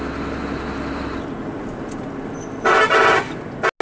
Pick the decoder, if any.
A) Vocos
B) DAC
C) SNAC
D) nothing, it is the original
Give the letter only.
D